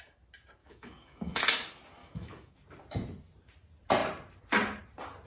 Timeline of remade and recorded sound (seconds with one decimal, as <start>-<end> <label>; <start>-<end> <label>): 0.0-0.6 recorded; 0.6-1.4 remade; 1.4-2.0 recorded; 2.0-2.5 remade; 2.5-5.3 recorded

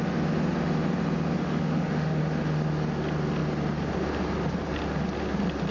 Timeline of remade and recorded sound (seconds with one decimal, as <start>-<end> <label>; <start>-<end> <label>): 0.0-1.4 recorded; 1.4-2.2 remade; 2.2-5.7 recorded

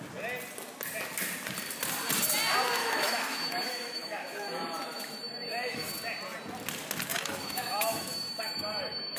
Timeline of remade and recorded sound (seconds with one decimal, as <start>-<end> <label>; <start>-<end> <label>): 0.0-2.8 recorded; 2.8-5.9 remade; 5.9-7.1 recorded; 7.1-9.2 remade

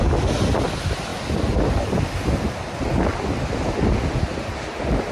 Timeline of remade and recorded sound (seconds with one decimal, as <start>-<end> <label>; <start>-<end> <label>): 0.0-5.1 recorded

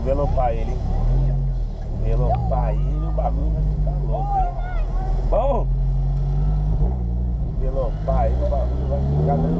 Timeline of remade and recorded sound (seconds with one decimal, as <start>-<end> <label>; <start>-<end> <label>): 0.0-9.6 recorded

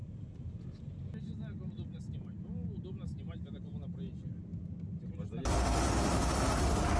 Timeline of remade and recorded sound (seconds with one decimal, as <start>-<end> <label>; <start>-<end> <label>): 0.0-7.0 recorded